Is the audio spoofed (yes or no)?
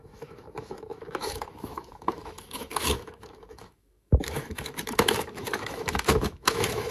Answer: yes